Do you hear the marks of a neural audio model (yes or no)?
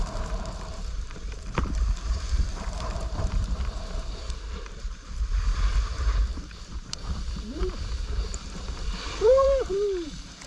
yes